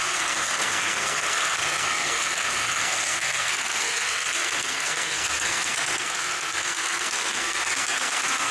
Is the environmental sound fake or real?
fake